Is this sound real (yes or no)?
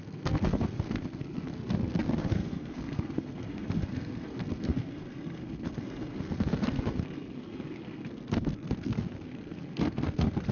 no